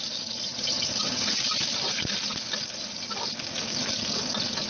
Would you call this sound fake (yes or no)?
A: no